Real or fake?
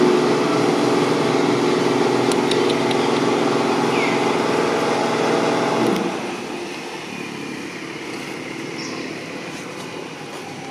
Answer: real